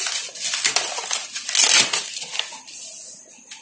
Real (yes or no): yes